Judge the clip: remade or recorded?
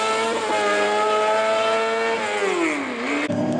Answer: recorded